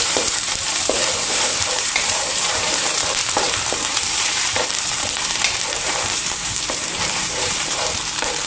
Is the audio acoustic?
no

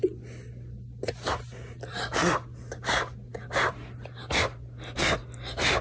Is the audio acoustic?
yes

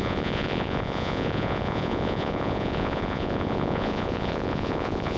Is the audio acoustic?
no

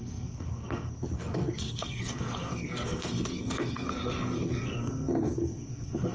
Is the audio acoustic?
no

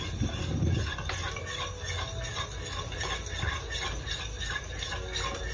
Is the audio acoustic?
yes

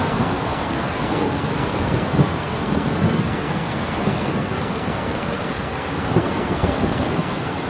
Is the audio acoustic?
no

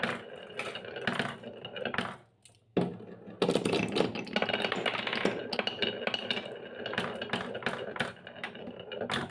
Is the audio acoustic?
yes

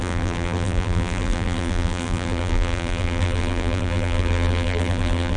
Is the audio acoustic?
no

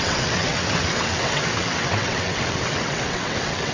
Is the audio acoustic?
no